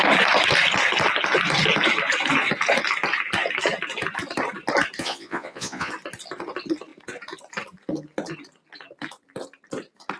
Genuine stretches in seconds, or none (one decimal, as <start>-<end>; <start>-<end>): 0.0-5.0; 5.9-10.2